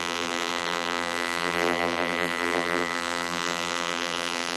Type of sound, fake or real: fake